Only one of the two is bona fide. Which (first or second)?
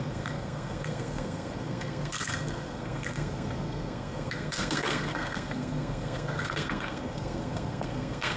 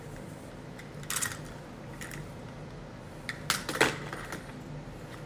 second